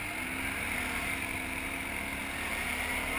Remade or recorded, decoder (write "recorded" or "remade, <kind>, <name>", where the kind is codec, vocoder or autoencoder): recorded